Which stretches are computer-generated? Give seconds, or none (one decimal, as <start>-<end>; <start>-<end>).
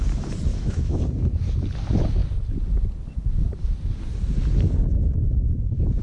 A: 0.5-1.0